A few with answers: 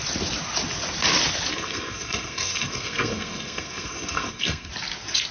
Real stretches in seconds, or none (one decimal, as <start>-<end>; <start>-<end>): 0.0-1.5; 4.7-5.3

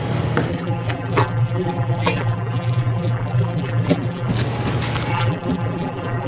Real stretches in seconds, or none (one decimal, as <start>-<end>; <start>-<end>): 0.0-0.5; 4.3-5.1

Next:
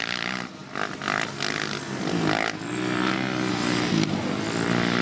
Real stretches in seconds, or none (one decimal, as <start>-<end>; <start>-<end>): 0.0-5.0

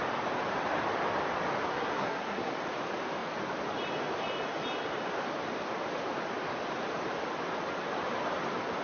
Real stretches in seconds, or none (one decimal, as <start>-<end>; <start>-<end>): 0.0-1.7; 2.5-8.8

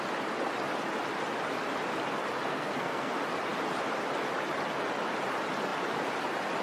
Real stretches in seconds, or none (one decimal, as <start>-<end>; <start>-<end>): 0.0-2.5; 3.1-6.6